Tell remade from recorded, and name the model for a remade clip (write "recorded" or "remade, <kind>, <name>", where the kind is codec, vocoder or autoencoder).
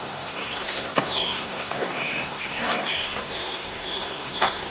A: remade, codec, SNAC